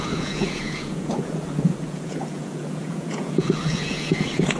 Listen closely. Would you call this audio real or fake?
fake